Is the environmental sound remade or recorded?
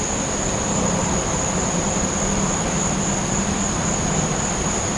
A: recorded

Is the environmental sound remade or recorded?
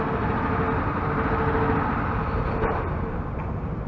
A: recorded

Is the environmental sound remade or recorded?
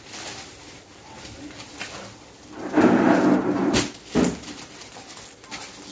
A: recorded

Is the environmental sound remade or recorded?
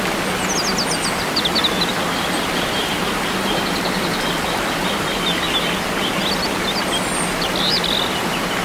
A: recorded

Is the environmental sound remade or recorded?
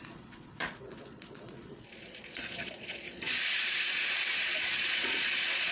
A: remade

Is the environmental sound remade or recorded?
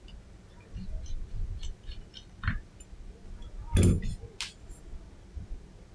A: recorded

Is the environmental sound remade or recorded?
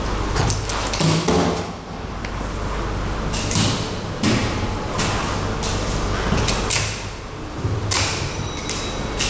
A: recorded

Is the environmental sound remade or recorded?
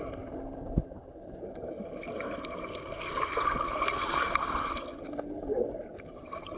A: recorded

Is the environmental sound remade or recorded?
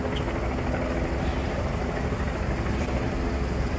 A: recorded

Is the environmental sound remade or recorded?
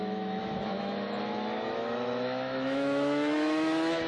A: remade